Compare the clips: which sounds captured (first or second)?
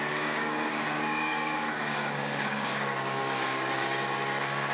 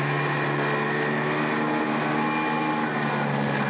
second